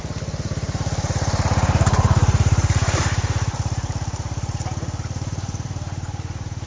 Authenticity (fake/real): fake